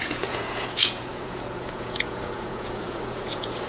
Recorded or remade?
remade